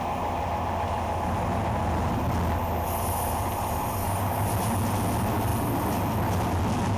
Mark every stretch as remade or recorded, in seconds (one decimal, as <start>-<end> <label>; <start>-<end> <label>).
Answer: 0.0-4.0 recorded; 4.0-4.5 remade; 4.5-7.0 recorded